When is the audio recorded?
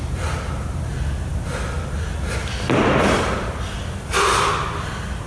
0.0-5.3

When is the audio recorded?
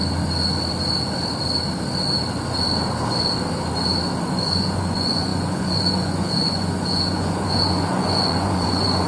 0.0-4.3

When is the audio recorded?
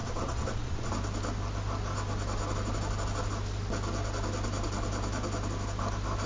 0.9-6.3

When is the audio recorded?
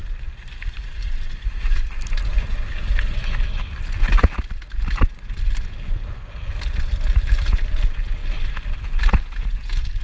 0.0-10.0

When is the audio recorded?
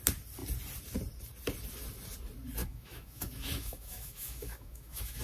0.0-2.6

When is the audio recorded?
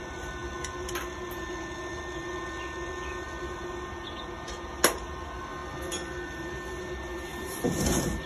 0.0-3.1; 3.7-5.6; 6.5-7.3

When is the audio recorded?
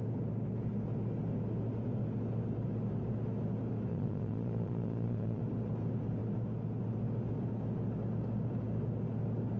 0.0-3.9; 5.4-9.6